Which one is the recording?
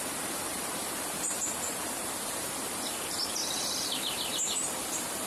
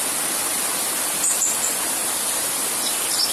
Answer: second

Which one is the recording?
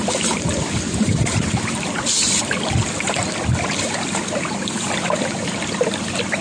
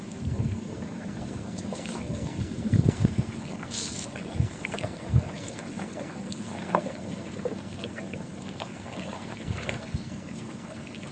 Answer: first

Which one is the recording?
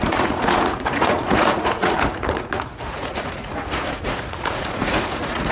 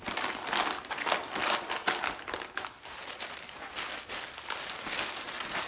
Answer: second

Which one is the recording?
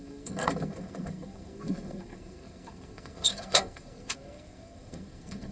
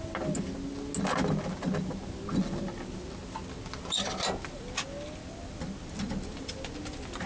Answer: second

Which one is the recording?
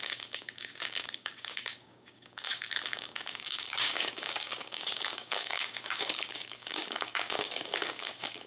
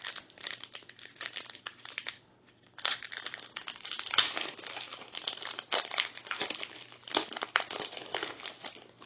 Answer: second